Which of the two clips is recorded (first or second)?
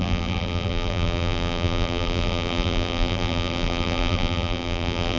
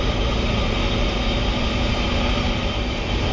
second